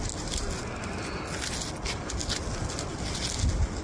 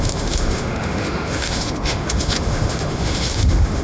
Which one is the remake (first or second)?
second